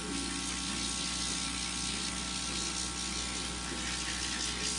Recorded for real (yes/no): yes